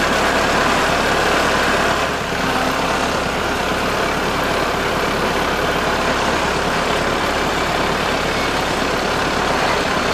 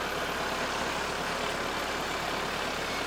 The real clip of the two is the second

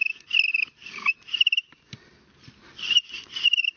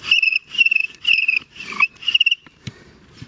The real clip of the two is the first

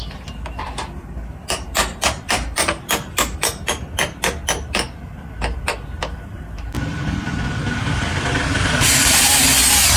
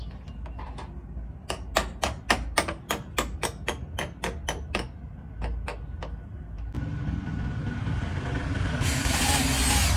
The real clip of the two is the second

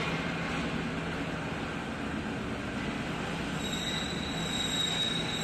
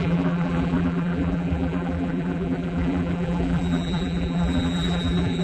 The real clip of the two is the first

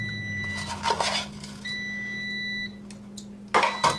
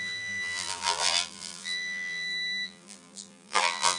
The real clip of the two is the first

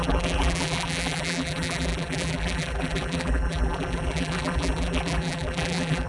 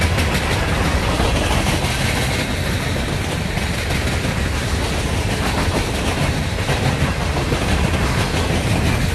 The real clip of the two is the second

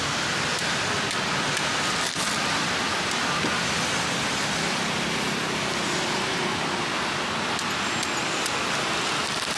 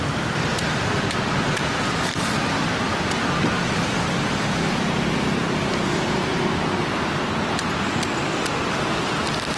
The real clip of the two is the first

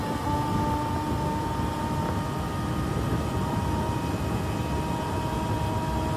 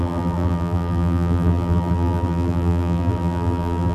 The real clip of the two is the first